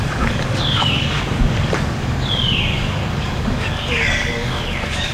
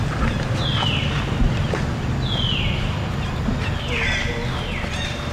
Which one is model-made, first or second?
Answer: first